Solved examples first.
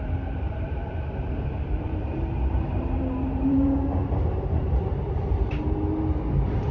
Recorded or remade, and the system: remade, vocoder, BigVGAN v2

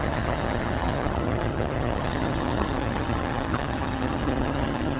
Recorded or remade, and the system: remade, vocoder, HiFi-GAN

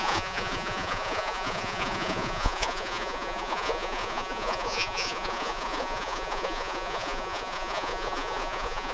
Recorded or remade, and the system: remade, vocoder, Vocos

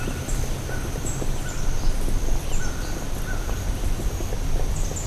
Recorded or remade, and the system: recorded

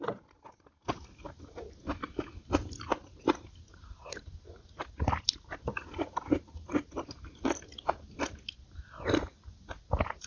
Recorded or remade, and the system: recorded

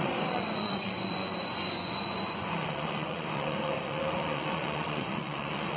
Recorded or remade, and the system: remade, vocoder, Vocos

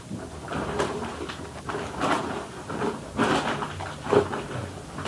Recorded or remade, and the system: recorded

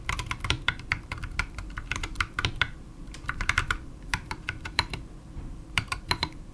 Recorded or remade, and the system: remade, vocoder, BigVGAN v2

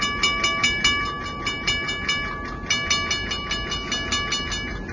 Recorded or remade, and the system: recorded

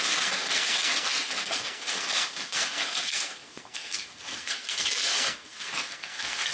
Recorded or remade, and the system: remade, codec, SNAC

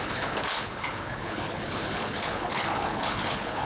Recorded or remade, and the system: remade, codec, HILCodec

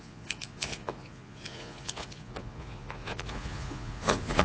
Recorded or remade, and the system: remade, vocoder, Vocos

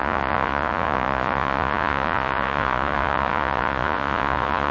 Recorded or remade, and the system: remade, vocoder, Vocos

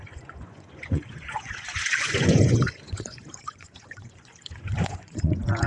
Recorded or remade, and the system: remade, vocoder, Vocos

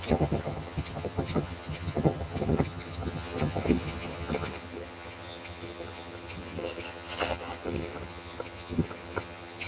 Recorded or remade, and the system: remade, vocoder, HiFi-GAN